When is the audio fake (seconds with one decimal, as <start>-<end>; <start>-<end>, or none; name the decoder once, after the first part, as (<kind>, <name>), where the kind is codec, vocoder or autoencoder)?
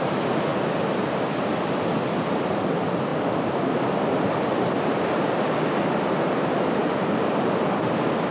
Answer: none